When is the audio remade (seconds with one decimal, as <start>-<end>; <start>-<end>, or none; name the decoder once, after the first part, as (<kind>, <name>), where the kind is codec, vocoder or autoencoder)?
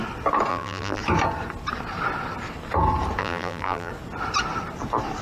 0.5-1.0 (vocoder, BigVGAN v2); 3.2-3.9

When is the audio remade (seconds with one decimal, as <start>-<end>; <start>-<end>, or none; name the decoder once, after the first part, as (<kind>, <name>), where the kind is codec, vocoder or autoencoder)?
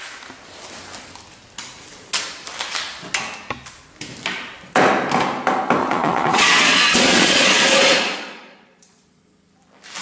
5.8-9.2 (vocoder, Vocos)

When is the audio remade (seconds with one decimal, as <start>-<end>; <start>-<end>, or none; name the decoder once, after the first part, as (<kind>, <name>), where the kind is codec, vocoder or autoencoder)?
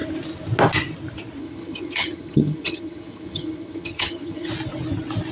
1.4-4.5 (vocoder, HiFi-GAN)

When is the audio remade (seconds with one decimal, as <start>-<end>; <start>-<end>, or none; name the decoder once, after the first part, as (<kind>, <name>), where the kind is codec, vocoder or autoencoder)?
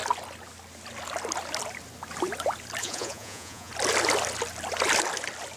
2.8-3.7 (vocoder, Vocos)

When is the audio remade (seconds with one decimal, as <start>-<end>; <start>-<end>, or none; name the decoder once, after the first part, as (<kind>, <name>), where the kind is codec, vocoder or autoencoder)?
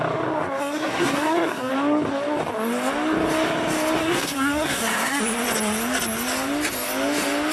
0.6-1.7 (codec, SNAC); 4.0-5.2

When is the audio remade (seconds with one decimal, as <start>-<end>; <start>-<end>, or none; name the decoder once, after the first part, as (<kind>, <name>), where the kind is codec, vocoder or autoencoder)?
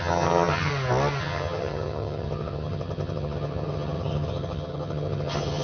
0.0-0.7 (vocoder, HiFi-GAN); 1.2-5.6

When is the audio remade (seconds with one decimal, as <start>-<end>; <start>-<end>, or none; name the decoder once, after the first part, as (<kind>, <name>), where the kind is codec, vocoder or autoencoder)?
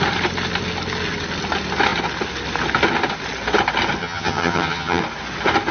4.0-5.0 (vocoder, HiFi-GAN)